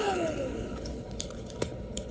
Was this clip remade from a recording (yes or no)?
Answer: yes